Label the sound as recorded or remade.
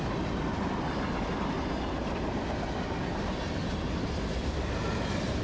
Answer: recorded